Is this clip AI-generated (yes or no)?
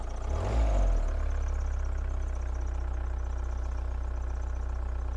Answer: no